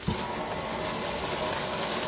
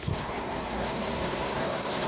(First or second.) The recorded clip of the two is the first